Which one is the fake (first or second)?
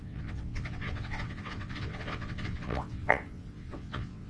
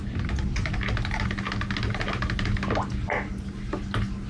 first